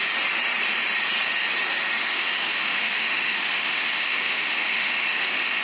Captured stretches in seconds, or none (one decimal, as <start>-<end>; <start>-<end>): 0.0-2.0